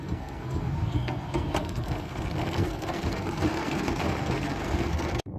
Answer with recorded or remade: remade